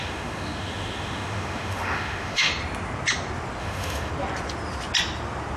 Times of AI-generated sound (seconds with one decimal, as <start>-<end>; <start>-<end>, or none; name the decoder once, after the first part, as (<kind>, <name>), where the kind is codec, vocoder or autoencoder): 0.0-2.5 (autoencoder, DAC-VAE); 3.6-4.1